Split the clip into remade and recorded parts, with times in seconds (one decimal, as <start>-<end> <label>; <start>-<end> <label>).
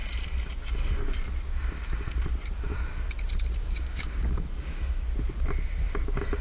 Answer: 0.0-3.6 recorded; 3.6-4.8 remade; 4.8-6.4 recorded